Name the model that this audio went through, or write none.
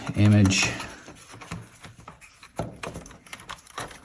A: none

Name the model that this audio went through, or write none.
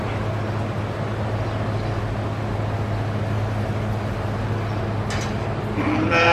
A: none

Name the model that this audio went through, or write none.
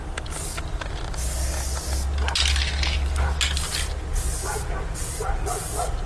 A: none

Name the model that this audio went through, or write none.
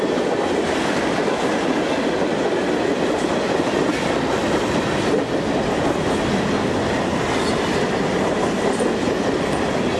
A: none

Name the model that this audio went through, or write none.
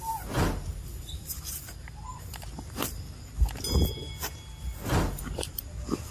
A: none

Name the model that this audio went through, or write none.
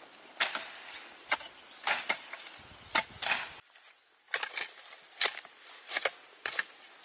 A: none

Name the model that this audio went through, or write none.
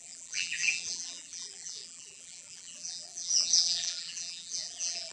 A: vocoder, BigVGAN v2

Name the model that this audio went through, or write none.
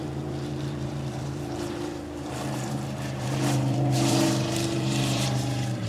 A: vocoder, BigVGAN v2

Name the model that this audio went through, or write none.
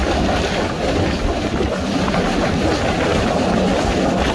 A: none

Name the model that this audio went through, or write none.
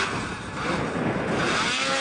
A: vocoder, BigVGAN v2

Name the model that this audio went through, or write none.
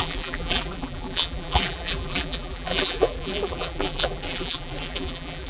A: vocoder, BigVGAN v2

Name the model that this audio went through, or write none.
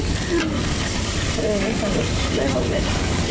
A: vocoder, BigVGAN v2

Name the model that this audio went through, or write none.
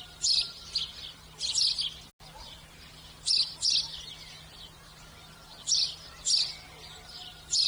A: none